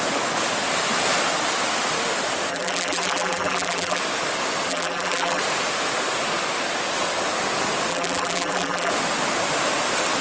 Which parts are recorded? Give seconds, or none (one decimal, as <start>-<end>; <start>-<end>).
0.0-2.5; 4.0-4.7; 5.4-7.9; 8.9-10.2